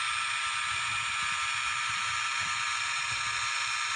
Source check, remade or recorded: recorded